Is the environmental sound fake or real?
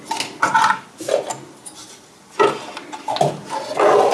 real